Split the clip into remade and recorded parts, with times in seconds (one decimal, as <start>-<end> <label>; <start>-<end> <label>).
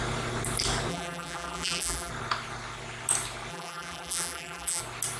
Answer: 0.0-0.9 recorded; 0.9-2.1 remade; 2.1-3.5 recorded; 3.5-4.8 remade; 4.8-5.2 recorded